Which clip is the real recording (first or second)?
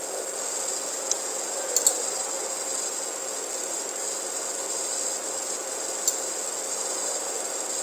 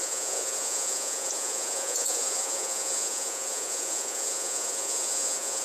first